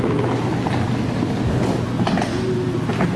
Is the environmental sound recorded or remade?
recorded